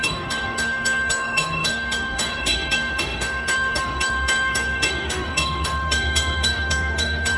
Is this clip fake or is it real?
fake